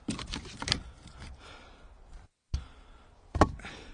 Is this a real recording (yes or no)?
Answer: no